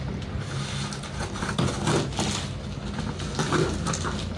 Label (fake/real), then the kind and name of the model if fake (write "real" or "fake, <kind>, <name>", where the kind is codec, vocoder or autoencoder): real